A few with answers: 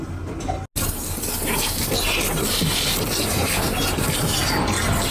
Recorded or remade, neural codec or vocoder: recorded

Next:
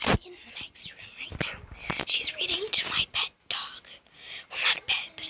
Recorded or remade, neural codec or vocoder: recorded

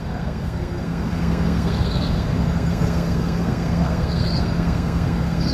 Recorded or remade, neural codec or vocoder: remade, codec, SNAC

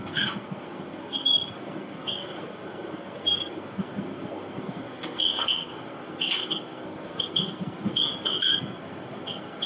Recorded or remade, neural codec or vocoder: remade, codec, SNAC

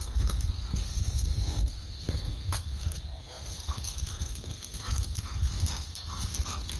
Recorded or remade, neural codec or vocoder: remade, codec, SNAC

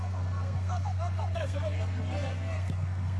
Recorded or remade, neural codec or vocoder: remade, codec, SNAC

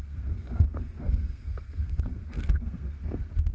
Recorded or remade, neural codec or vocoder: remade, codec, SNAC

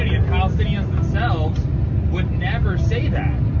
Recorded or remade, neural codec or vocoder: recorded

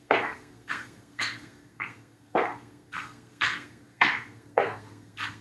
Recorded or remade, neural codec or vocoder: remade, codec, SNAC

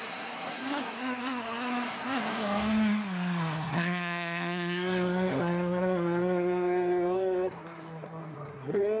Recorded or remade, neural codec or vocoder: remade, codec, SNAC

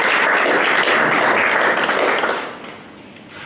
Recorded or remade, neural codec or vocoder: recorded